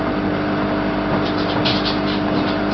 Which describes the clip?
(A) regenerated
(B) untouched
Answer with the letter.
B